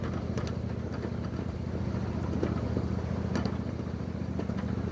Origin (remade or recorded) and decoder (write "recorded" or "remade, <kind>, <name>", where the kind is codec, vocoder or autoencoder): recorded